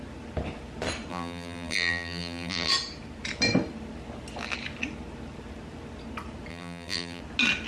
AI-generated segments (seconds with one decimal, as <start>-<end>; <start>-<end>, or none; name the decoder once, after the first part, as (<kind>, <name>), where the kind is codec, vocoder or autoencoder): 1.1-2.7 (vocoder, BigVGAN v2); 6.5-7.2